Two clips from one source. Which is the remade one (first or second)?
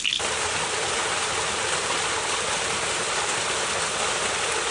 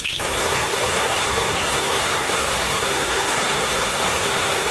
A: second